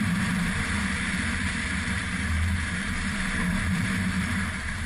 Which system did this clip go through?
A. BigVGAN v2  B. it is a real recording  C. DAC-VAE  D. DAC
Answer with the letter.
A